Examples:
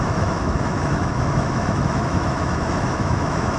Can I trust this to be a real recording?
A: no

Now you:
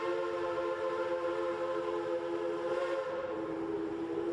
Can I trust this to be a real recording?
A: yes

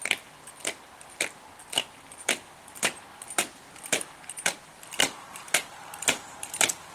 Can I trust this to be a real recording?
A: yes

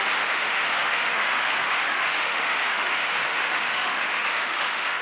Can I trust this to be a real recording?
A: no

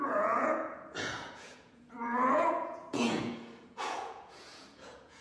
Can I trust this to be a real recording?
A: no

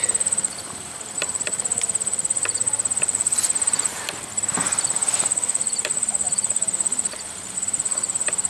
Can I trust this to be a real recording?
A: no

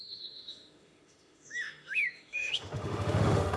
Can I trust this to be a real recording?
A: no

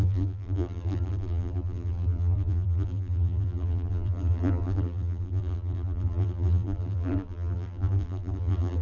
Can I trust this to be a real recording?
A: no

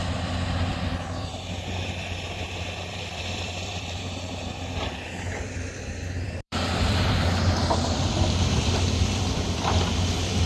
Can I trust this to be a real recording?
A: no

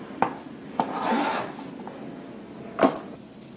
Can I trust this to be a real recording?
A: yes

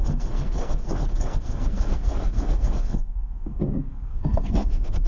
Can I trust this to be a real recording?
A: no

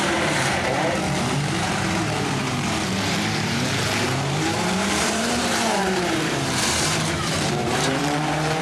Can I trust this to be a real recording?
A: no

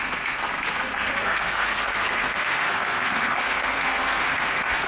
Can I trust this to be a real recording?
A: no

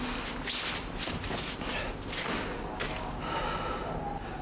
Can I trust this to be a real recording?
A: yes